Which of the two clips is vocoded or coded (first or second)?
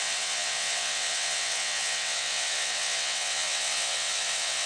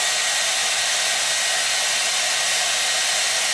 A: first